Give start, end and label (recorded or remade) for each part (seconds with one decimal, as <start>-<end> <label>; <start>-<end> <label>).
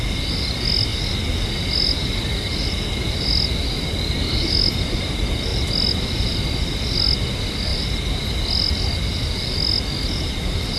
0.0-10.8 recorded